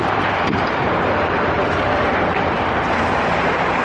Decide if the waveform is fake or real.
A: fake